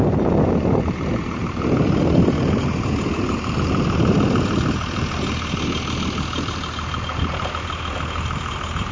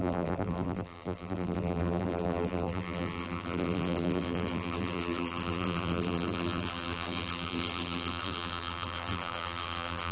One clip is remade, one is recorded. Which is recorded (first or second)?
first